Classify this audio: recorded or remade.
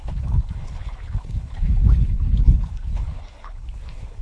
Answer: remade